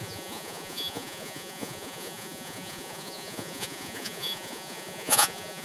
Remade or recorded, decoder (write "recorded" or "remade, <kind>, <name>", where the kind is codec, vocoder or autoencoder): remade, vocoder, Vocos